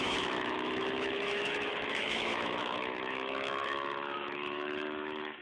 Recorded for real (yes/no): no